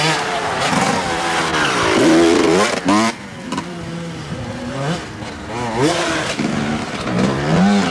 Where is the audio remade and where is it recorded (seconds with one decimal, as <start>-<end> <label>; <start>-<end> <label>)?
0.0-7.9 recorded